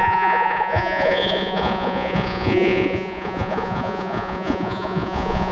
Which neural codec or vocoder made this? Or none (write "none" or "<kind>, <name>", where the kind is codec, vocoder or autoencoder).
vocoder, Vocos